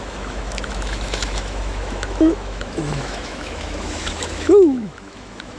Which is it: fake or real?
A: fake